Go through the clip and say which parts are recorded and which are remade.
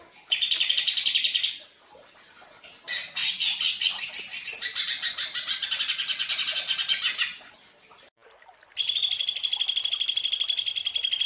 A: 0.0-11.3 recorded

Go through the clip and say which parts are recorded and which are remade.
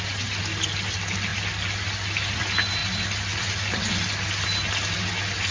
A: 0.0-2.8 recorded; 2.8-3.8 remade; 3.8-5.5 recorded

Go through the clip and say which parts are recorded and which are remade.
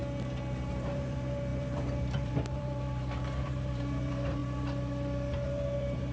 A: 0.0-0.7 recorded; 0.7-4.4 remade; 4.4-5.3 recorded; 5.3-6.1 remade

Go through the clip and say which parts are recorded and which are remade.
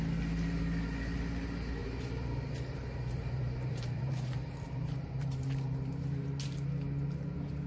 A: 0.0-1.8 recorded; 1.8-6.4 remade; 6.4-7.7 recorded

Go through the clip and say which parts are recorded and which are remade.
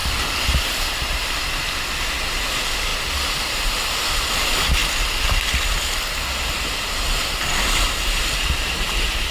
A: 0.0-1.1 recorded; 1.1-2.9 remade; 2.9-3.6 recorded; 3.6-4.8 remade; 4.8-8.2 recorded; 8.2-9.3 remade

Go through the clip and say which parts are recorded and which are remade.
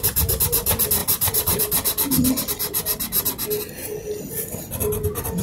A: 0.0-1.0 recorded; 1.0-1.6 remade; 1.6-5.4 recorded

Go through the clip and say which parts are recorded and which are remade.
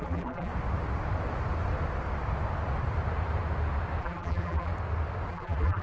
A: 0.0-0.5 remade; 0.5-4.0 recorded; 4.0-4.7 remade; 4.7-5.3 recorded; 5.3-5.8 remade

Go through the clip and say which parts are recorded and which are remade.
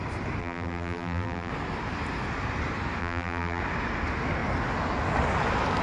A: 0.0-0.4 recorded; 0.4-1.5 remade; 1.5-3.0 recorded; 3.0-3.6 remade; 3.6-5.8 recorded